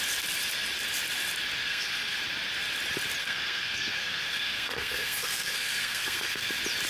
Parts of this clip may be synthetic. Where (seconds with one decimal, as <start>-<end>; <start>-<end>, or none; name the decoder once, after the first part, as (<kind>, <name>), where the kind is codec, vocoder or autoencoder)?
1.6-2.2 (codec, SNAC); 3.2-6.5